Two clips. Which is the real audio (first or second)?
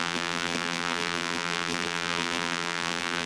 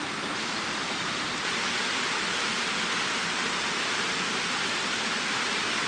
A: second